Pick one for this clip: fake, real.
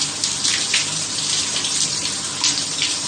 fake